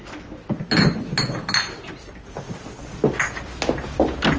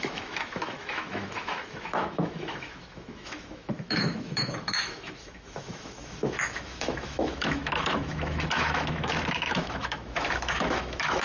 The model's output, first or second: second